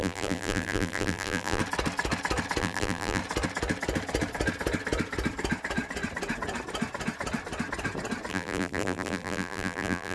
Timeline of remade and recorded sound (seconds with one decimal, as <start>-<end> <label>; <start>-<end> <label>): 0.0-1.6 remade; 1.6-2.6 recorded; 2.6-3.2 remade; 3.2-8.3 recorded; 8.3-10.1 remade